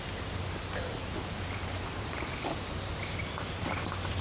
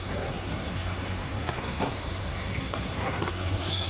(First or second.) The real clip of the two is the first